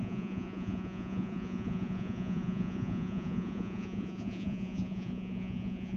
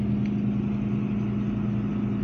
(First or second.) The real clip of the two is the second